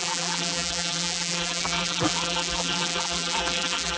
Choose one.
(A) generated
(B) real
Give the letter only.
A